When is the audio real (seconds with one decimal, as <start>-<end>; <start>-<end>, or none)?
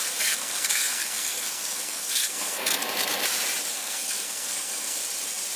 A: 2.8-3.7; 5.0-5.6